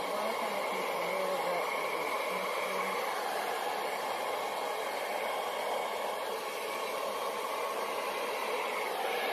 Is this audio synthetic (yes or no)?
no